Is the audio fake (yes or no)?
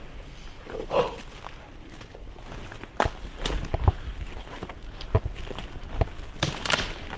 no